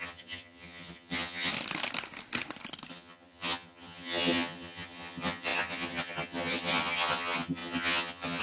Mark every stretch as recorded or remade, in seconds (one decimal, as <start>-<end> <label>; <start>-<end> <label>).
0.0-1.5 remade; 1.5-2.9 recorded; 2.9-8.4 remade

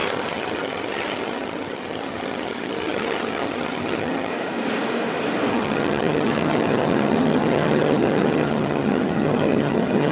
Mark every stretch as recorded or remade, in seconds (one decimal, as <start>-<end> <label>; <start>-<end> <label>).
0.0-4.3 remade; 4.3-5.5 recorded; 5.5-10.1 remade

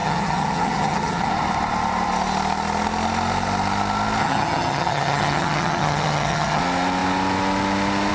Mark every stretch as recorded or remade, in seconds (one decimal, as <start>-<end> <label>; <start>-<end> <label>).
0.0-1.3 remade; 1.3-4.2 recorded; 4.2-6.6 remade; 6.6-8.1 recorded